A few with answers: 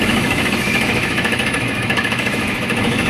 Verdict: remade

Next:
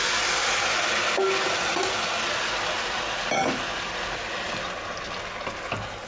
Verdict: recorded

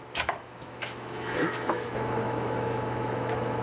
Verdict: remade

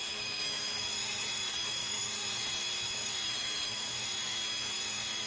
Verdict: remade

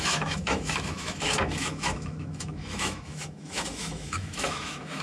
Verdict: remade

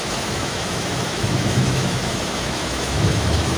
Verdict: remade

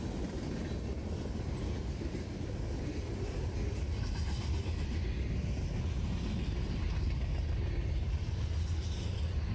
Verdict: recorded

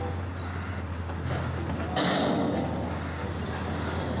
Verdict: recorded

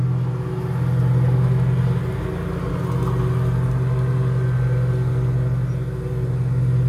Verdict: recorded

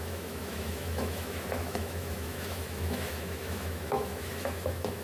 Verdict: remade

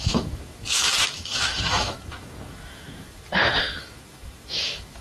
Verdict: remade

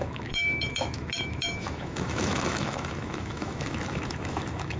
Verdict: remade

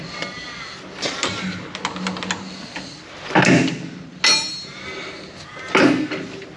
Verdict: recorded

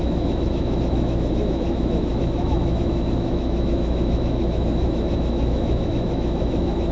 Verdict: remade